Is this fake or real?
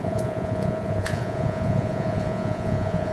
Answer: fake